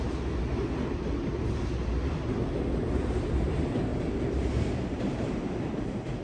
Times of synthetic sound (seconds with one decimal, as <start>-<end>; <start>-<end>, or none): 3.9-6.2